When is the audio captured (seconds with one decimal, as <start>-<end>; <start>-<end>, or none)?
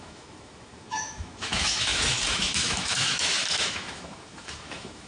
none